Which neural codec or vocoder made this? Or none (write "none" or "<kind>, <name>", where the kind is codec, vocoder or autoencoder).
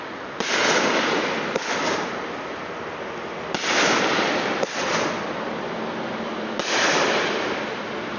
none